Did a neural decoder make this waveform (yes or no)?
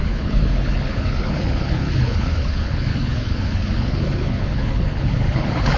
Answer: yes